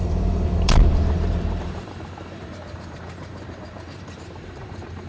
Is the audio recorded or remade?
remade